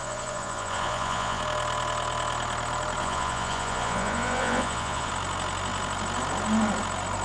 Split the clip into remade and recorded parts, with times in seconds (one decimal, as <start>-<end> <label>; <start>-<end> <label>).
0.0-1.4 remade; 1.4-3.0 recorded; 3.0-5.1 remade; 5.1-7.2 recorded